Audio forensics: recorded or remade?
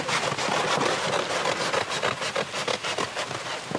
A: recorded